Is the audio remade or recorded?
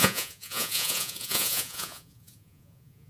remade